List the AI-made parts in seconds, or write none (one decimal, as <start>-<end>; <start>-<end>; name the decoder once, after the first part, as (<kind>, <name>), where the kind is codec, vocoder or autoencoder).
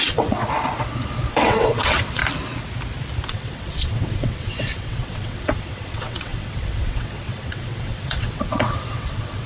0.0-0.4 (vocoder, WaveNeXt); 1.3-2.2; 3.3-9.5